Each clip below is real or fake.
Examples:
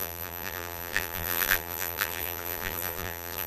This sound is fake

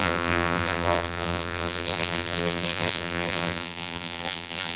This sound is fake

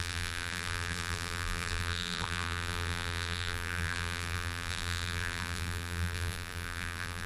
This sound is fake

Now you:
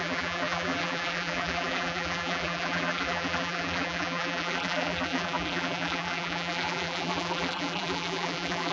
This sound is fake